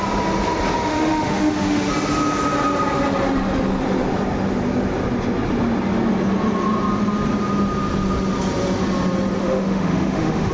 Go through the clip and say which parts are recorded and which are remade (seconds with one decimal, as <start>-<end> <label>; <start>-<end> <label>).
0.0-0.9 recorded; 0.9-1.9 remade; 1.9-9.4 recorded; 9.4-10.5 remade

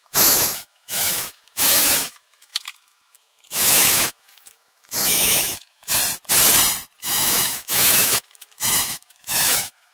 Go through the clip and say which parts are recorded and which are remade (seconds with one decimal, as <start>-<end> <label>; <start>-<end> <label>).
0.0-6.0 remade; 6.0-7.0 recorded; 7.0-9.9 remade

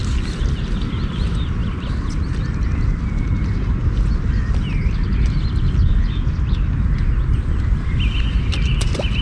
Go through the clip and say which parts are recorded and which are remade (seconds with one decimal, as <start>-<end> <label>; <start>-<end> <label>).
0.0-9.2 recorded

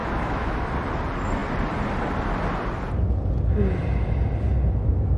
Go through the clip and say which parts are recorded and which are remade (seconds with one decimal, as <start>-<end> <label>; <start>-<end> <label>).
0.0-0.6 remade; 0.6-5.2 recorded